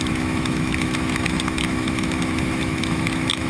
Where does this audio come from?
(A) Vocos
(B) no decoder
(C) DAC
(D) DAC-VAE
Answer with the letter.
D